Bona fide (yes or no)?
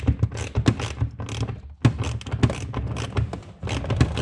yes